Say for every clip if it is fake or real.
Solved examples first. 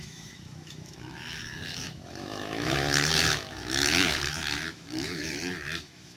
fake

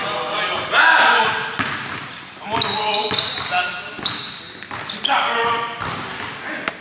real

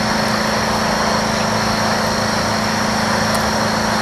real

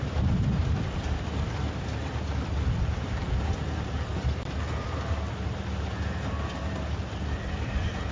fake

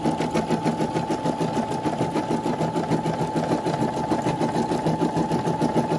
real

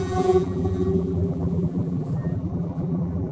fake